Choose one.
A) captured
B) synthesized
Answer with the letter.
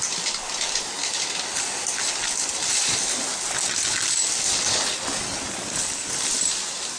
B